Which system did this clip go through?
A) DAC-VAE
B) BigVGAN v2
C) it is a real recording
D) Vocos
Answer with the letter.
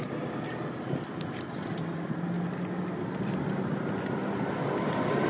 C